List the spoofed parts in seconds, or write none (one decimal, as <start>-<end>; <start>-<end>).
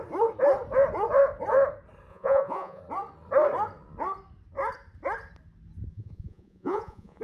2.1-2.8; 5.9-7.2